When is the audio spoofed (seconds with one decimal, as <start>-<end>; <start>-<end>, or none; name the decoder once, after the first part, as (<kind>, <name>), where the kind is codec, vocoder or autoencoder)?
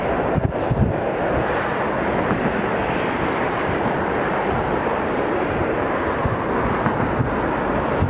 2.8-3.7 (vocoder, BigVGAN v2); 4.9-5.9